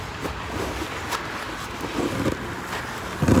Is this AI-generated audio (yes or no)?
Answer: no